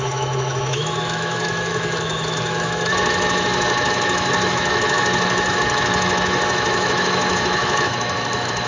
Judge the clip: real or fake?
fake